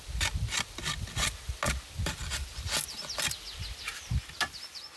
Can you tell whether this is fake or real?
real